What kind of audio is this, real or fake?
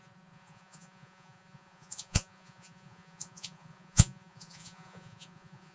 fake